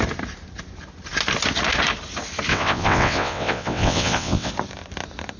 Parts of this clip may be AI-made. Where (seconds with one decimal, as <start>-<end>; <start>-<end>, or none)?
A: 2.5-4.5